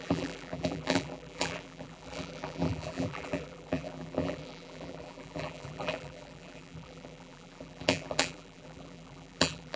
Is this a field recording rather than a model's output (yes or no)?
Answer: no